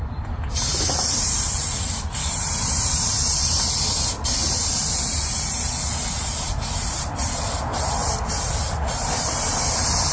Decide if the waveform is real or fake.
real